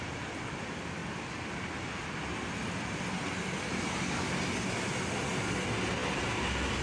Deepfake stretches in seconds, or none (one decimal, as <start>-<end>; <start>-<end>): none